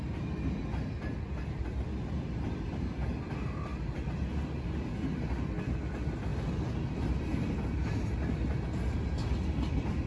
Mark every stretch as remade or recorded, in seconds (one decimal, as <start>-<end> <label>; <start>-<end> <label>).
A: 0.0-10.1 recorded

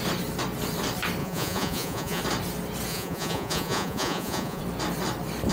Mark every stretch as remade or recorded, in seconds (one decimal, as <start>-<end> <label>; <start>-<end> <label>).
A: 0.0-1.2 recorded; 1.2-2.2 remade; 2.2-2.9 recorded; 2.9-4.6 remade; 4.6-5.5 recorded

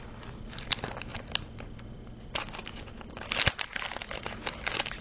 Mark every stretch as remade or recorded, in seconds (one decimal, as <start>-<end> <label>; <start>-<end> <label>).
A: 0.0-5.0 recorded

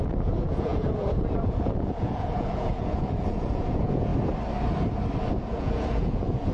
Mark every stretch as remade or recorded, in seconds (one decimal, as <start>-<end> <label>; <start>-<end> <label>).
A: 0.0-4.1 remade; 4.1-5.3 recorded; 5.3-6.5 remade

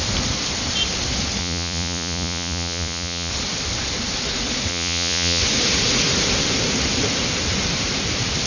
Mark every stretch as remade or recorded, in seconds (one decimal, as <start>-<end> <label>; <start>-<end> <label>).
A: 0.0-1.4 recorded; 1.4-3.3 remade; 3.3-4.7 recorded; 4.7-5.4 remade; 5.4-8.5 recorded